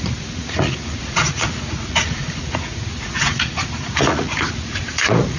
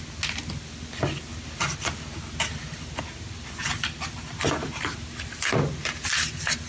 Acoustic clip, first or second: second